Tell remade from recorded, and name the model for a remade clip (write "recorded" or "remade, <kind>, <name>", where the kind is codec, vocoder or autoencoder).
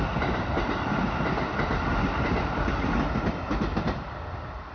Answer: recorded